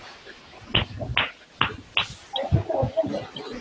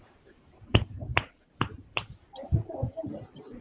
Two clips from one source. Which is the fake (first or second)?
second